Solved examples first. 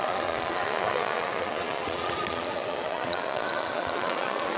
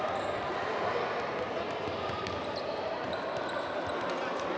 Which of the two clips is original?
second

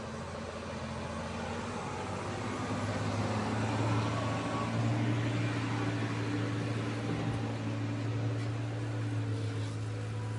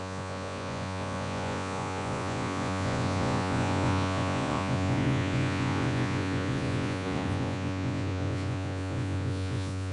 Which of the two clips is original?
first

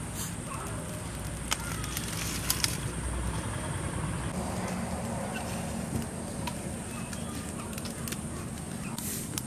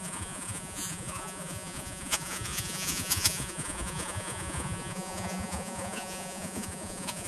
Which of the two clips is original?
first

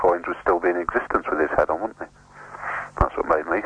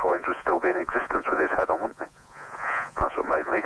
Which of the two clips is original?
first